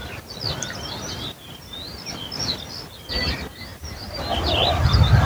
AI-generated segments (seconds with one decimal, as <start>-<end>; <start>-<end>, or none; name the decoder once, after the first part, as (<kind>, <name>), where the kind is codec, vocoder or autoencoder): 3.1-5.3 (vocoder, BigVGAN v2)